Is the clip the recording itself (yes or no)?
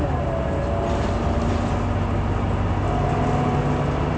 yes